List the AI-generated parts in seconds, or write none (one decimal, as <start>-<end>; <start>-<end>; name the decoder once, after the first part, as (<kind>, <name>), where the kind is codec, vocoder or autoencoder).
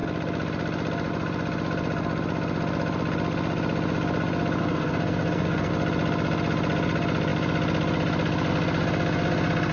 4.6-5.7 (codec, SNAC)